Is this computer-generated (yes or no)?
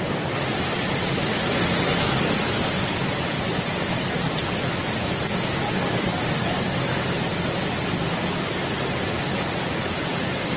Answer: no